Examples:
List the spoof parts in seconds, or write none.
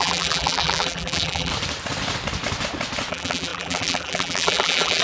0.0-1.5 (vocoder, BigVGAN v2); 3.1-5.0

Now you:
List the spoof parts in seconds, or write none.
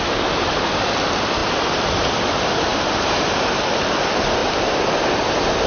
1.4-2.1 (vocoder, BigVGAN v2); 2.7-3.6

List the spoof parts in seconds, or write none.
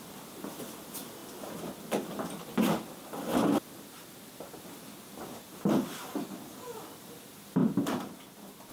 7.6-8.7 (vocoder, BigVGAN v2)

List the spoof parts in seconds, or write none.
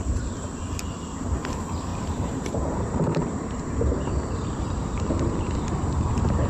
1.9-5.5 (vocoder, BigVGAN v2)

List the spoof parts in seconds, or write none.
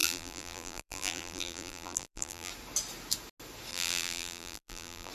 0.0-2.5 (vocoder, BigVGAN v2); 3.7-5.1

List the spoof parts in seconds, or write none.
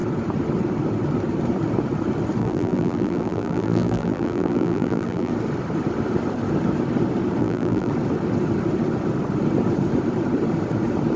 2.4-5.3 (vocoder, BigVGAN v2); 7.4-7.9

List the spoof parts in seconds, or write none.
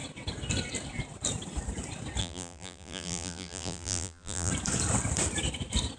2.2-4.5 (vocoder, BigVGAN v2)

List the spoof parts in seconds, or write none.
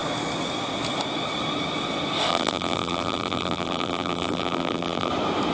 2.3-5.1 (vocoder, BigVGAN v2)